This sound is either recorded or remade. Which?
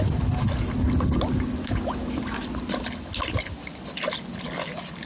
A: recorded